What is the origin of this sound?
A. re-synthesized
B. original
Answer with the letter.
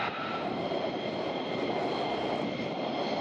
B